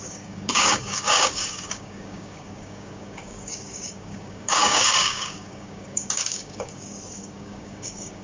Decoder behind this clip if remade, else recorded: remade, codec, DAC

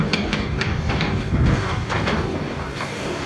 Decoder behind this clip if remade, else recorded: remade, codec, DAC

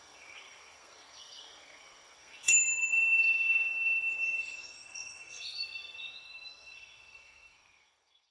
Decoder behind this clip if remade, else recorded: remade, codec, SNAC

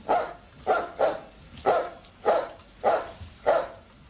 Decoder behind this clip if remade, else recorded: recorded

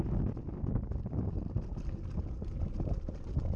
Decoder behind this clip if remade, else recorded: recorded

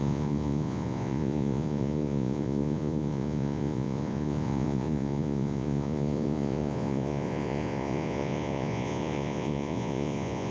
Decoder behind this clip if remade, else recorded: remade, vocoder, Vocos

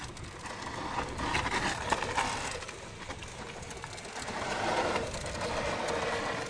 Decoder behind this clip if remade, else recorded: recorded